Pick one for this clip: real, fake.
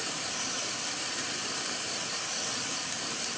fake